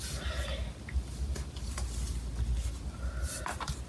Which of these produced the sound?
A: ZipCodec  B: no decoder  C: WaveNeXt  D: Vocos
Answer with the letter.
B